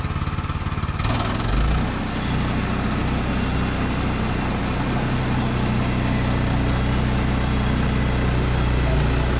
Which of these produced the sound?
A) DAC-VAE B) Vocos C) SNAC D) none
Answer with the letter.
D